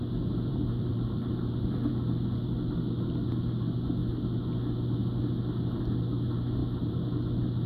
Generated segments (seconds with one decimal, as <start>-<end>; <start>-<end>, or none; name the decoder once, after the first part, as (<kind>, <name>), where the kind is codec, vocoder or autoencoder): 0.5-1.9 (vocoder, BigVGAN v2); 6.6-7.2